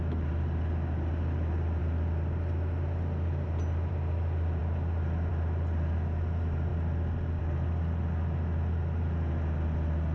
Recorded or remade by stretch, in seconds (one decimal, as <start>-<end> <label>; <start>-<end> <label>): 0.0-10.1 recorded